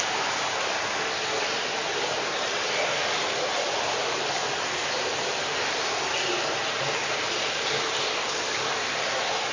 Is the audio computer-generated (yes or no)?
no